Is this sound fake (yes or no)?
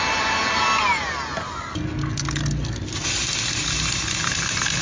no